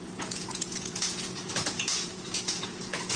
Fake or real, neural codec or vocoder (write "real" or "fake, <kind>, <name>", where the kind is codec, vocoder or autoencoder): fake, vocoder, Vocos